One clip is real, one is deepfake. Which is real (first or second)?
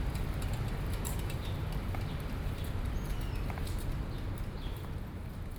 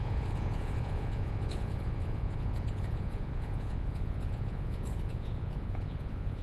first